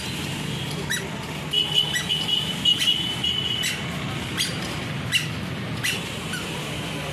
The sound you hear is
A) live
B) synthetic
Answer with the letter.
A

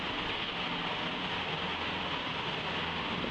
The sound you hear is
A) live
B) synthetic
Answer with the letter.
A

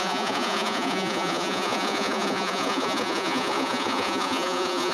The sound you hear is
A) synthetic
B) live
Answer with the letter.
A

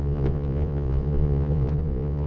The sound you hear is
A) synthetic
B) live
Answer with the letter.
A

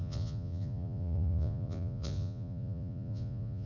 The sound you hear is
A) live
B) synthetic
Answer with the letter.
B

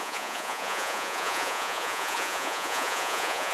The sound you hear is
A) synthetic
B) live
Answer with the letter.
A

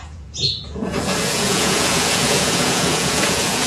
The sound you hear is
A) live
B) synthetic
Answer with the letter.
B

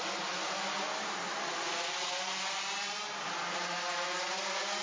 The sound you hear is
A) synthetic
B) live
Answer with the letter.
B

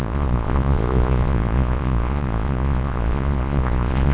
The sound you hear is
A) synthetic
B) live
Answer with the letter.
A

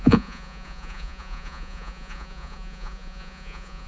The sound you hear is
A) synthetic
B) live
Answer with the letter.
A